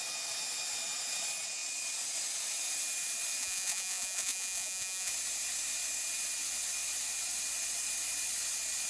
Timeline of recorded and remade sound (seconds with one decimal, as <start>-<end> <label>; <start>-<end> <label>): 0.0-3.4 recorded; 3.4-5.1 remade; 5.1-8.9 recorded